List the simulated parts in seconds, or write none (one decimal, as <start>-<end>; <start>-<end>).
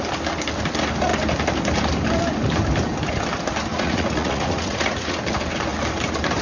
3.7-5.2